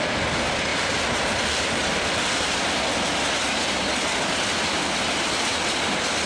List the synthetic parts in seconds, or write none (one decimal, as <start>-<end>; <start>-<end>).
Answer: none